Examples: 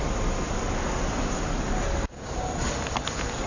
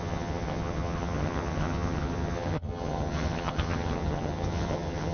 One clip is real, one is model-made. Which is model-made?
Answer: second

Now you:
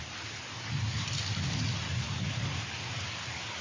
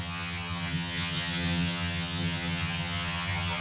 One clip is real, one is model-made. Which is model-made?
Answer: second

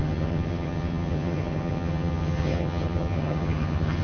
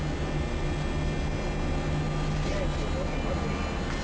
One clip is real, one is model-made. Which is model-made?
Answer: first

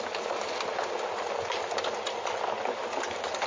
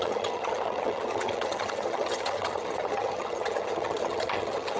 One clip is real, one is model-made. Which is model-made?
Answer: second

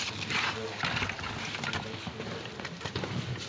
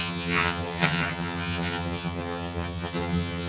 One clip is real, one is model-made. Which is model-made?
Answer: second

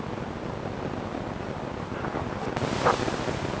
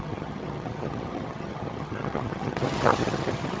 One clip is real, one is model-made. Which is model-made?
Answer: second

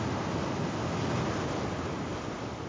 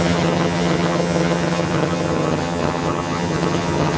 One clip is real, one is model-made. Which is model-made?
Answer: second